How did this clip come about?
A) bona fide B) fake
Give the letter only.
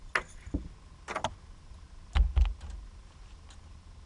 A